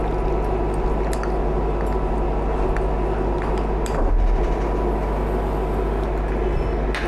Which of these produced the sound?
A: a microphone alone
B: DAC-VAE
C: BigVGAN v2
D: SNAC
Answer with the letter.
A